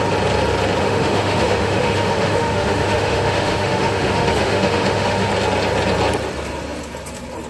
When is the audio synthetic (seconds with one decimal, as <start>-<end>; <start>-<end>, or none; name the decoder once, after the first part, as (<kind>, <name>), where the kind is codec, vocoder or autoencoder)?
0.8-5.3 (autoencoder, DAC-VAE)